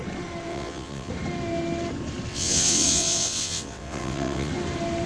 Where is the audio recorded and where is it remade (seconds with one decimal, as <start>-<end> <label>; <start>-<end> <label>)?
0.0-0.5 recorded; 0.5-1.1 remade; 1.1-2.3 recorded; 2.3-4.5 remade; 4.5-5.1 recorded